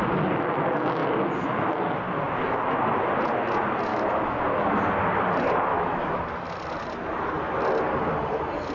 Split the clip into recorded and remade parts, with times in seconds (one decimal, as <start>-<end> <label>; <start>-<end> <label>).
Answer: 0.0-3.9 recorded; 3.9-4.4 remade; 4.4-5.7 recorded; 5.7-6.2 remade; 6.2-8.7 recorded